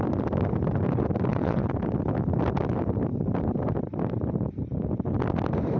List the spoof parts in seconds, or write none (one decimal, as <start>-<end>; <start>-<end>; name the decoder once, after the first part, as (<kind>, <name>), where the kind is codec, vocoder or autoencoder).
1.3-1.8 (vocoder, WaveNeXt)